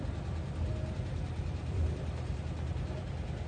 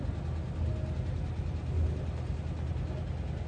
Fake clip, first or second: first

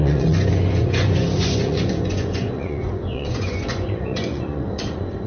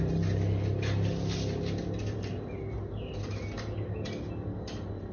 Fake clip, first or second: first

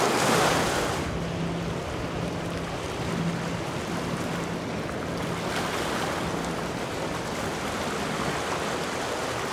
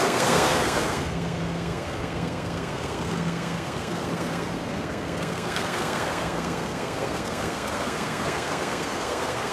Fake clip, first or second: second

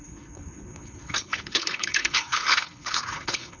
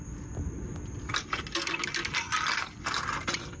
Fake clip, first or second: first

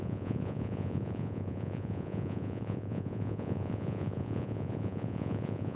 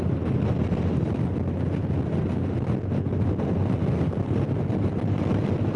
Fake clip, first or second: first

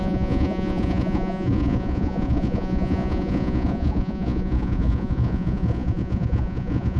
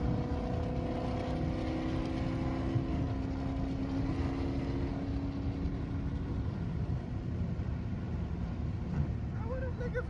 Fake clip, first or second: first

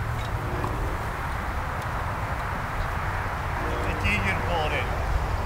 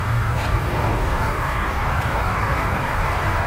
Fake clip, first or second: second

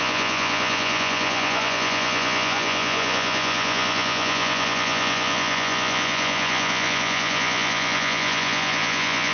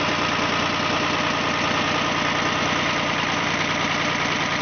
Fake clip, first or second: first